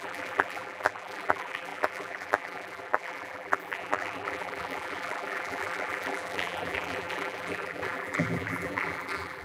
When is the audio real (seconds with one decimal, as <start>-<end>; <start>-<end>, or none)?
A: none